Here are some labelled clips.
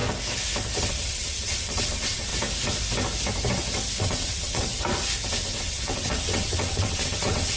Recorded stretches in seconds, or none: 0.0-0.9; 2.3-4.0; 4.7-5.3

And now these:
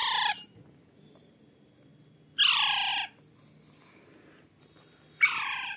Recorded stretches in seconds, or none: 1.9-2.5; 2.9-4.9

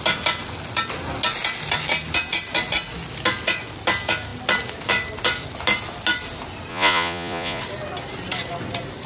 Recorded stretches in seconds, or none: 0.0-6.7; 7.6-9.1

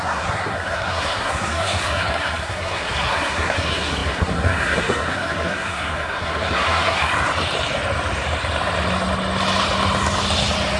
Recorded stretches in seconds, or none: 7.1-10.8

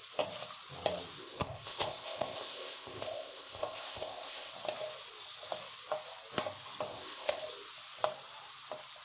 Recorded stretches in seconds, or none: 0.0-1.2; 4.5-6.9; 7.4-9.0

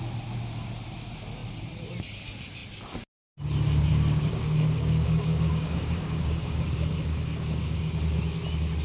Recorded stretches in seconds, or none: 0.0-3.9; 7.9-8.8

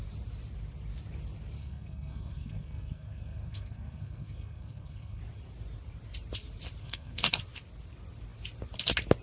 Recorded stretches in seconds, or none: 0.0-1.6; 5.2-6.8; 7.4-9.2

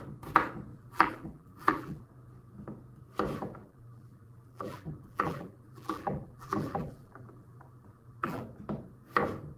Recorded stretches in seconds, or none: 0.0-0.7; 2.1-3.6; 8.4-9.6